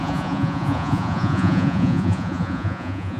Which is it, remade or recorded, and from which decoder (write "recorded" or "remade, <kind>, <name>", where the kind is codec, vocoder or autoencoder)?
remade, vocoder, Vocos